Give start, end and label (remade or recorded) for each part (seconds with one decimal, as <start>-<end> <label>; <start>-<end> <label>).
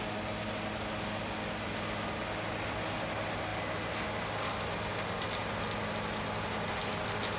0.0-7.4 recorded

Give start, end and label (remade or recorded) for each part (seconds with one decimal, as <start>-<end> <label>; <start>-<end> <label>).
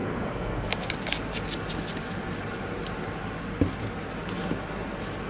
0.0-0.9 remade; 0.9-5.3 recorded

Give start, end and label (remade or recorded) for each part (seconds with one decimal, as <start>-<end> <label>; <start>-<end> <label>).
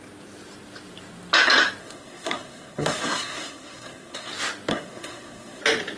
0.0-1.8 recorded; 1.8-4.3 remade; 4.3-4.7 recorded; 4.7-5.6 remade; 5.6-6.0 recorded